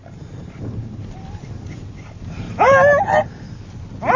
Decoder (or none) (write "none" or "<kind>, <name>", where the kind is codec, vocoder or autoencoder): none